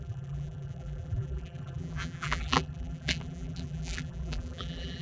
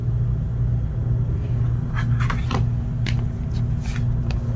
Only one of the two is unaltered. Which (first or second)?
second